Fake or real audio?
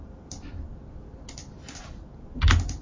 real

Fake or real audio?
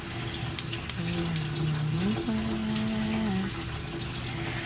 real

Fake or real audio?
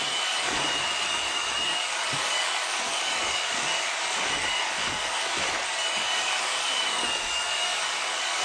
fake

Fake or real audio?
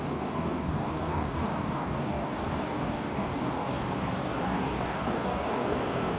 fake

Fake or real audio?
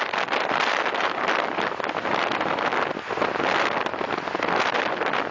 real